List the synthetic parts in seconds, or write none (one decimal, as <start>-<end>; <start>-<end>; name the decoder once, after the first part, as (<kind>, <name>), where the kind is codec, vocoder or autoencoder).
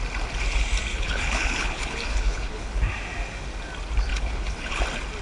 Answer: 0.9-2.8 (codec, HILCodec); 4.1-4.8